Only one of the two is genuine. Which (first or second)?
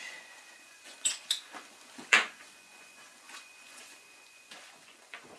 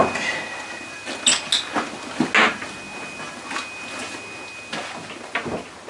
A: second